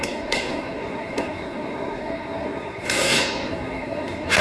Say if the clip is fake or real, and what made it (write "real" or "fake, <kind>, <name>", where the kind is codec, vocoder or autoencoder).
fake, codec, SNAC